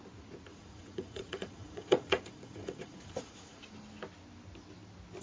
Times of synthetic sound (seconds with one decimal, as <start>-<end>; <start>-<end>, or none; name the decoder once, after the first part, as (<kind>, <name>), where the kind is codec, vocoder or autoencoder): 0.5-3.6 (vocoder, Vocos)